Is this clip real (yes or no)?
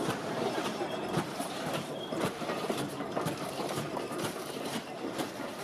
no